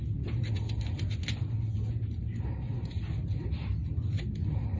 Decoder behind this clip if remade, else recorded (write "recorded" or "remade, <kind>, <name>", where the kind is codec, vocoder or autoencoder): recorded